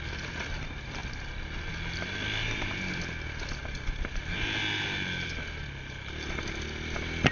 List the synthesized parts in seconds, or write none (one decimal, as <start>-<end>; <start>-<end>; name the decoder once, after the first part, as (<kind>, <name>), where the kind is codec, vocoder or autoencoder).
none